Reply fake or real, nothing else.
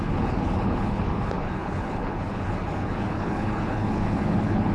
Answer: fake